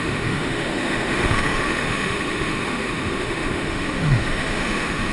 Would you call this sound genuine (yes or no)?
no